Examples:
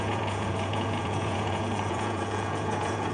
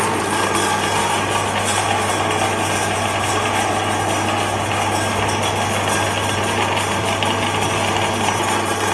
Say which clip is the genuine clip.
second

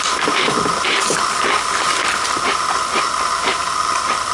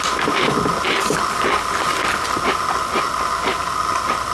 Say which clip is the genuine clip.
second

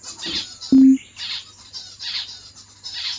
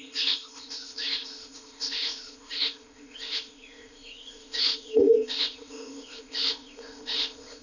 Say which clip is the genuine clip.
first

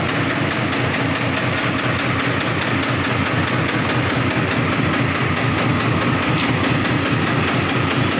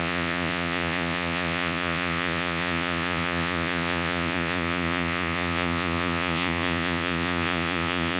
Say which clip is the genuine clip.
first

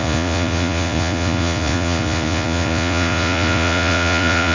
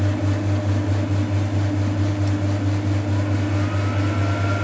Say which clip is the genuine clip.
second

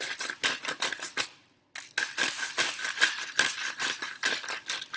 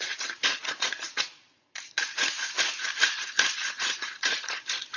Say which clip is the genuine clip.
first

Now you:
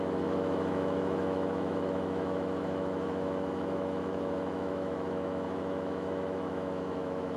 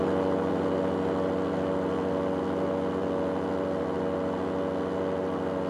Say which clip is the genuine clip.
second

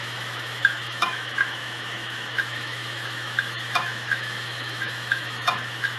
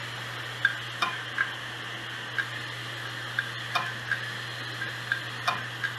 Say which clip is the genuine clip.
second